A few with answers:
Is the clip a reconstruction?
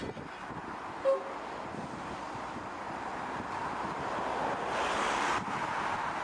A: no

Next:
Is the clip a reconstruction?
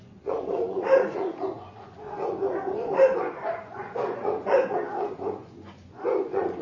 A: yes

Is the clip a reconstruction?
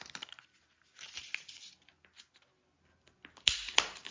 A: no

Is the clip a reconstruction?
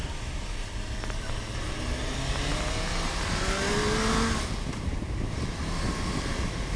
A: no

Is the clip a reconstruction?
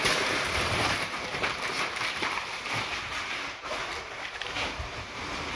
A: yes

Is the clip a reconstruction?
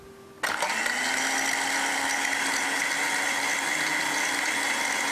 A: no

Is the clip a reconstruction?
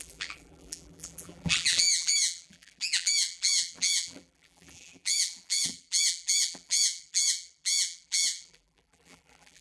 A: yes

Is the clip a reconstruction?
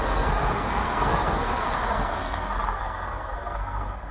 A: yes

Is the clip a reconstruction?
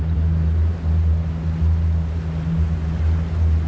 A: no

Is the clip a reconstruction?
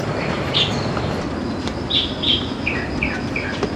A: yes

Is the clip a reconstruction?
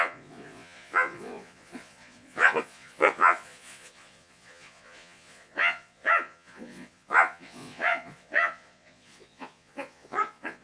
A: yes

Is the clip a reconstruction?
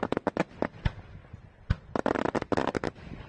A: no